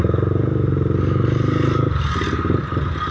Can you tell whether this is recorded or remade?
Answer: recorded